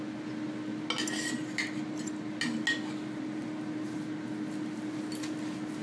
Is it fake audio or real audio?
real